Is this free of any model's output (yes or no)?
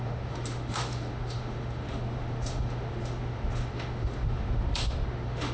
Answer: no